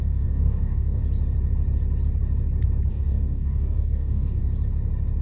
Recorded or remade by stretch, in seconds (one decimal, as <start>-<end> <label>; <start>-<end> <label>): 0.0-1.0 remade; 1.0-2.9 recorded; 2.9-4.4 remade; 4.4-5.2 recorded